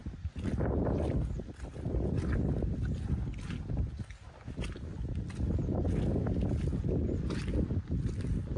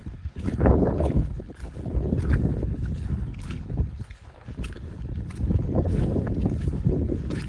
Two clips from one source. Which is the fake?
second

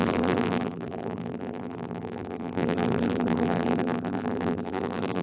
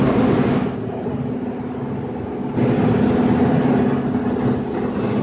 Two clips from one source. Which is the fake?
first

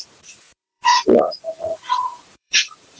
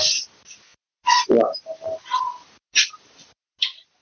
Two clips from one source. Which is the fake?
first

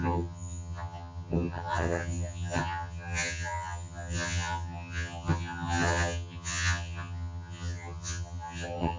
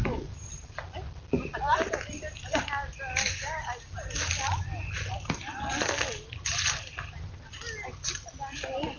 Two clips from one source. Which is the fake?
first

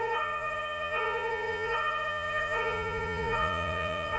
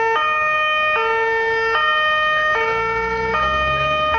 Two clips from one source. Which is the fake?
first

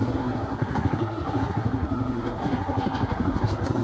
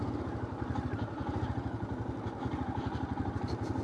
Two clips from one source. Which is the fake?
first